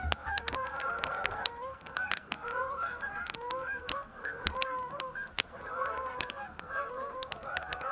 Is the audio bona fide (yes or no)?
no